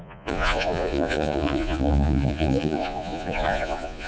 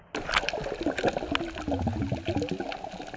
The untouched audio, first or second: second